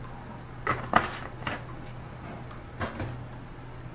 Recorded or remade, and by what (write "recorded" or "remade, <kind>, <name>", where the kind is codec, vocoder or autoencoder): recorded